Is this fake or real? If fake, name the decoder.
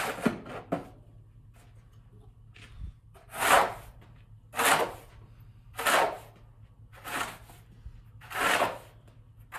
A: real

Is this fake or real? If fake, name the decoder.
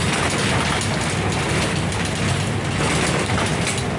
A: real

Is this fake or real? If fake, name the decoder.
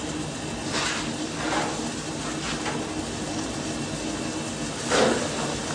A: real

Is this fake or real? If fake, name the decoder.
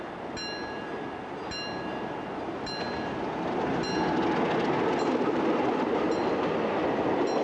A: real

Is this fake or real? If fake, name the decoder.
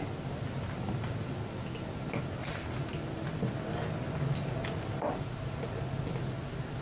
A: real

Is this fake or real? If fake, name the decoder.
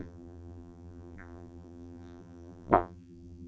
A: fake, vocoder, BigVGAN v2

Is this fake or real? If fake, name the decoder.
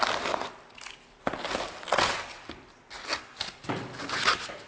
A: real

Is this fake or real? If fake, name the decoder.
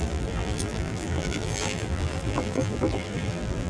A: fake, vocoder, BigVGAN v2